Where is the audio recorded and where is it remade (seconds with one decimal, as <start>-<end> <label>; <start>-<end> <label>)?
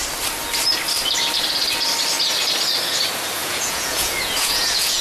0.0-3.4 recorded; 3.4-5.0 remade